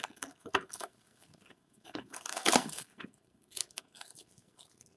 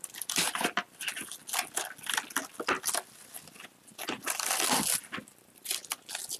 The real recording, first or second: second